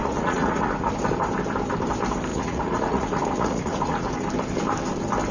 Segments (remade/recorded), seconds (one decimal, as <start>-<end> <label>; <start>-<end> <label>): 0.0-0.9 remade; 0.9-2.3 recorded; 2.3-4.1 remade; 4.1-5.3 recorded